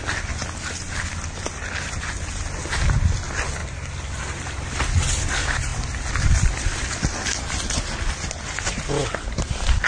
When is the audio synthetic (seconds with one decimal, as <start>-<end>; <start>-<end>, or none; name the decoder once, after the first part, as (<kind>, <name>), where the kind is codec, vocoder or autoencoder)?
none